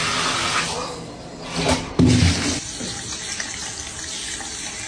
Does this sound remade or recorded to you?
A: recorded